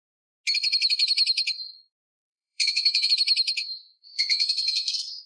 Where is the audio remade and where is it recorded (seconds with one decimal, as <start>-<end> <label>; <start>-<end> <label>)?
0.0-2.1 recorded; 2.1-3.1 remade; 3.1-3.6 recorded; 3.6-5.3 remade